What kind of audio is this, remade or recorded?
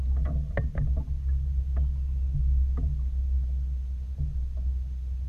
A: recorded